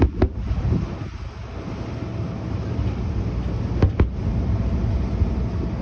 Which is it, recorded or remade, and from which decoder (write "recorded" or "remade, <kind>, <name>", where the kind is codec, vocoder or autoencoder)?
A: recorded